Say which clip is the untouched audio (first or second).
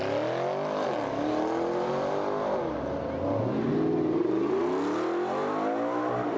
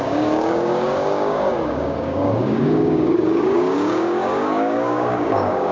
first